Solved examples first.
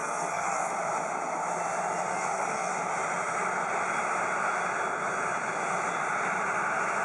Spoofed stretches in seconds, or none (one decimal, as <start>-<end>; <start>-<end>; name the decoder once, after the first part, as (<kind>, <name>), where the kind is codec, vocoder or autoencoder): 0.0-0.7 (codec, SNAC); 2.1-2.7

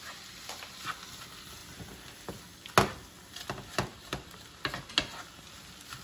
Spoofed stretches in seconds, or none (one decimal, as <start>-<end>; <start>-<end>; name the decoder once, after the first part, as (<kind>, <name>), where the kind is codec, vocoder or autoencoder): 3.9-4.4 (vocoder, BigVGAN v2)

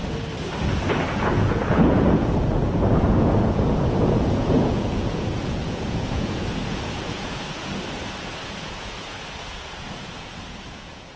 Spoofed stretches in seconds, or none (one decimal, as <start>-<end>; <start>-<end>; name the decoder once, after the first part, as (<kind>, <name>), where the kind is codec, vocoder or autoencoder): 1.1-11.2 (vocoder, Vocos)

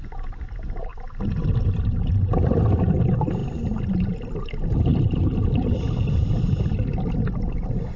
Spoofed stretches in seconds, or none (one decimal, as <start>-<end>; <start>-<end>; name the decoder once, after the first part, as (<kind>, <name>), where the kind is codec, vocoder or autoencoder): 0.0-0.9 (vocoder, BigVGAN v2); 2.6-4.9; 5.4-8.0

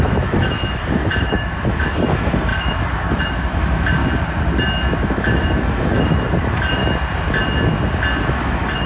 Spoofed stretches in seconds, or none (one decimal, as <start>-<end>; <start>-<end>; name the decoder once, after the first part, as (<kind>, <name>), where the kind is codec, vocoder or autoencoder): 0.0-4.0 (autoencoder, DAC-VAE); 4.9-6.8; 8.3-8.9

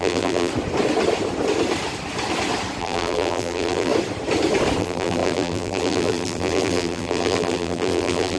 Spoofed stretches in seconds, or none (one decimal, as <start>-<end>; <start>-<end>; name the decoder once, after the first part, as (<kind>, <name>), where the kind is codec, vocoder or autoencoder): 0.0-0.5 (vocoder, BigVGAN v2); 2.8-3.9; 4.8-8.4

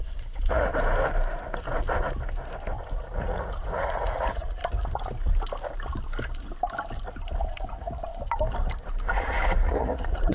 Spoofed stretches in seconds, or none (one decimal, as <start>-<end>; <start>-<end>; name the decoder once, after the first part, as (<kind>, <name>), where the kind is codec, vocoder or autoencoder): 0.0-0.7 (vocoder, Vocos); 2.9-4.6; 7.4-8.1; 9.0-10.3

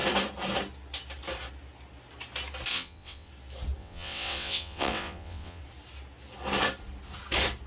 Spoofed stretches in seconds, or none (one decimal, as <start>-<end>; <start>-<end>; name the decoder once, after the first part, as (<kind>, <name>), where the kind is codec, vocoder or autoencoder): 2.7-3.3 (vocoder, WaveNeXt); 3.8-5.6